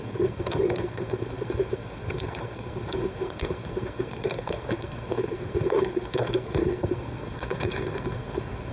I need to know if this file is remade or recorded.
remade